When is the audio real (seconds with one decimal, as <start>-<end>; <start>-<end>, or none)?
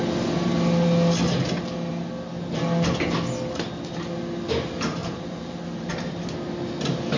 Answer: 0.0-5.0; 5.9-7.2